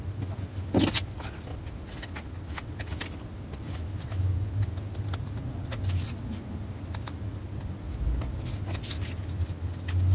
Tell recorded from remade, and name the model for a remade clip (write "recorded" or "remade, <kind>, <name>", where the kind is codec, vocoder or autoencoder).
recorded